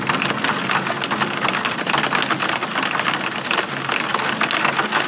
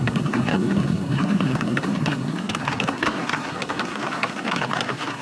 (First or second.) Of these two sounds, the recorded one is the first